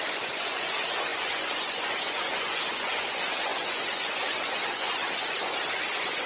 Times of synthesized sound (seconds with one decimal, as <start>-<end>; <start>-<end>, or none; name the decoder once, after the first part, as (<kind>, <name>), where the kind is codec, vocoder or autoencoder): 0.0-6.3 (vocoder, Vocos)